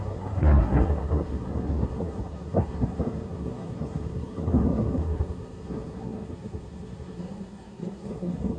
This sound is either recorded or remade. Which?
remade